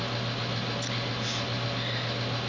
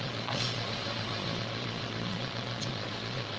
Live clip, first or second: first